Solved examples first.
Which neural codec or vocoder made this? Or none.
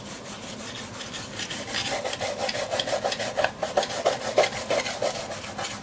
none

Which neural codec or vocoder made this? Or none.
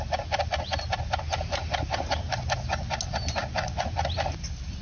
none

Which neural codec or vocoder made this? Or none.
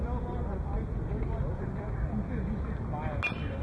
none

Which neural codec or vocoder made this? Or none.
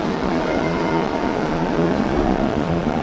vocoder, Vocos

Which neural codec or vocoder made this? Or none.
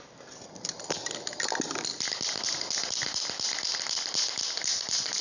none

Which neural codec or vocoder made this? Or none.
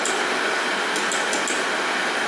none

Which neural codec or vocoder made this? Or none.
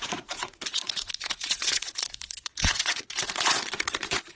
vocoder, Vocos